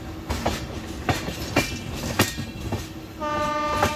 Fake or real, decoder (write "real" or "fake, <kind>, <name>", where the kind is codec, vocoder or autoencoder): real